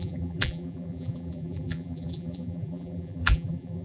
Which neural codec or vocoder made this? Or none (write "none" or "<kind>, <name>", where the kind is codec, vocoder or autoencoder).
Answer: vocoder, BigVGAN v2